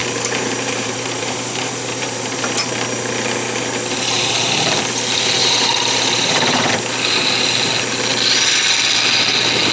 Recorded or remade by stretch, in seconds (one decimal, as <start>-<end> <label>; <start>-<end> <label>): 0.0-2.7 remade; 2.7-5.4 recorded; 5.4-6.7 remade; 6.7-9.7 recorded